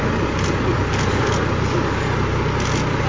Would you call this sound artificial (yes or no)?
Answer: no